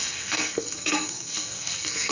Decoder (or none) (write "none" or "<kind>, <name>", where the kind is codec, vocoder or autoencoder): codec, SNAC